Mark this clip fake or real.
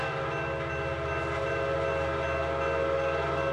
real